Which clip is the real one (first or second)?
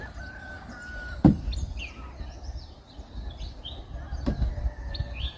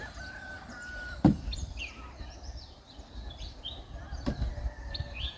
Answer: first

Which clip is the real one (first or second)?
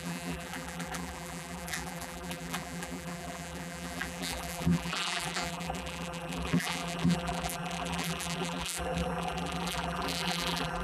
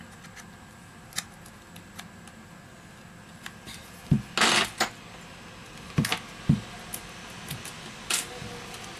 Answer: second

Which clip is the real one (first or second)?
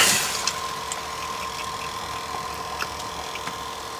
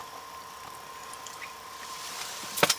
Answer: first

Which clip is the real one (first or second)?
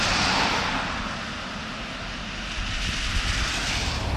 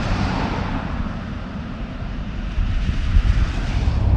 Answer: first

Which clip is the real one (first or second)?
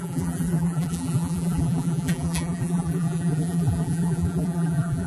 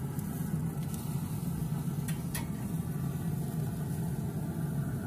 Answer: second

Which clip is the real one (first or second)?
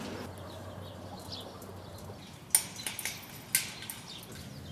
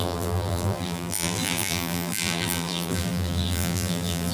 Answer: first